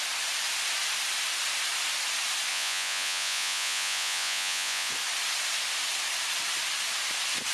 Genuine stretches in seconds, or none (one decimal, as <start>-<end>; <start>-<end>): 0.0-2.5; 4.9-7.5